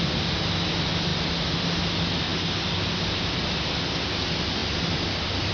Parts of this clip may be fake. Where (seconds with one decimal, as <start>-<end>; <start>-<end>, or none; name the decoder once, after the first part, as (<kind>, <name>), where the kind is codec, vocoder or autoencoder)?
none